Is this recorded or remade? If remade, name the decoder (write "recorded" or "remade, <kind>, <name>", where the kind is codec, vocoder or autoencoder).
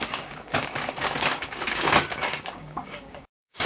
remade, codec, DAC